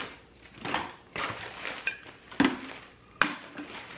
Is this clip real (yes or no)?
yes